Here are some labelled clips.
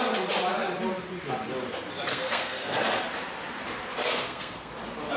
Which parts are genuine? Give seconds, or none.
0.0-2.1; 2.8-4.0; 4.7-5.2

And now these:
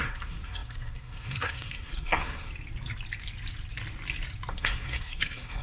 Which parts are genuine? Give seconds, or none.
2.5-4.5